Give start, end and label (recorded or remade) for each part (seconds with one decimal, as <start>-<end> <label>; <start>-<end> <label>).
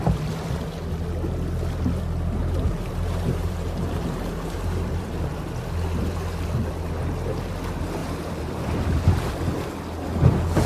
0.0-2.4 recorded; 2.4-5.3 remade; 5.3-8.0 recorded; 8.0-9.3 remade; 9.3-10.7 recorded